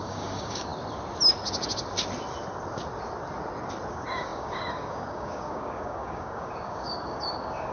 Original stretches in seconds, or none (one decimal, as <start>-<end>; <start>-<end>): 0.7-3.9